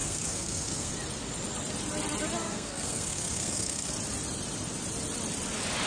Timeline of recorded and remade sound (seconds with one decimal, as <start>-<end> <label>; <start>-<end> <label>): 0.0-0.9 remade; 0.9-2.4 recorded; 2.4-3.9 remade; 3.9-5.9 recorded